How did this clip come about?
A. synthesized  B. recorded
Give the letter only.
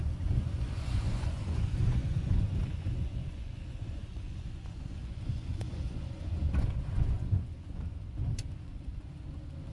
A